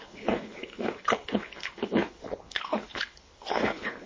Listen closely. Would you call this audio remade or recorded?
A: remade